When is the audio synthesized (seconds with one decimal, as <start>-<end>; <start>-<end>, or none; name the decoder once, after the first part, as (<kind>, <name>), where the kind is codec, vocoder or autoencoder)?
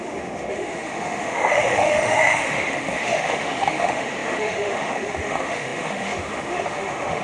0.0-7.2 (autoencoder, DAC-VAE)